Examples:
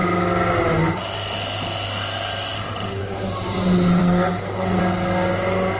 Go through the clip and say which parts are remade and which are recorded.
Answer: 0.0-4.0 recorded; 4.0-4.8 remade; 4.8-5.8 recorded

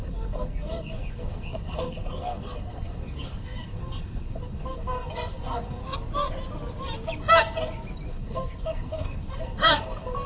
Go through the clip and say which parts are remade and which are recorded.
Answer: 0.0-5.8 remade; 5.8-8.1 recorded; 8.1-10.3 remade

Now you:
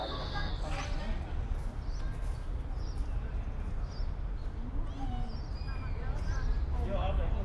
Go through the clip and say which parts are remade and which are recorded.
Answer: 0.0-0.5 remade; 0.5-7.4 recorded

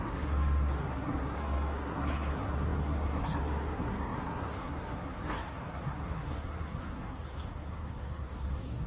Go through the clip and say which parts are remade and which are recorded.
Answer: 0.0-8.9 remade

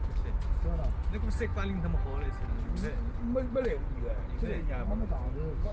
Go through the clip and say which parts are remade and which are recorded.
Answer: 0.0-5.7 recorded

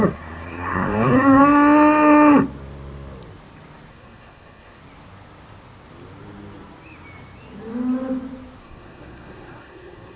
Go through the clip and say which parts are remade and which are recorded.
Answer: 0.0-1.4 remade; 1.4-3.9 recorded; 3.9-4.8 remade; 4.8-8.6 recorded; 8.6-10.2 remade